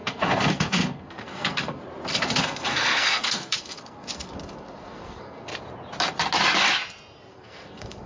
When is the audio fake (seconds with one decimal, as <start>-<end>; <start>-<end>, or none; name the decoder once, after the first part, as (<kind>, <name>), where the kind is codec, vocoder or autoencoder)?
0.0-1.8 (codec, SNAC); 2.4-5.5; 7.3-8.1